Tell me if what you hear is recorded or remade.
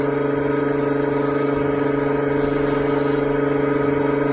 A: recorded